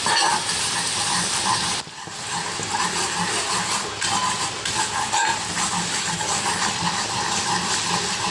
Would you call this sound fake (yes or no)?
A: no